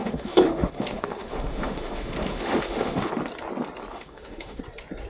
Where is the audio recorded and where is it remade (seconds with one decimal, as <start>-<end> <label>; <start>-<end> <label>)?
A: 0.0-3.1 remade; 3.1-3.9 recorded; 3.9-4.6 remade; 4.6-5.1 recorded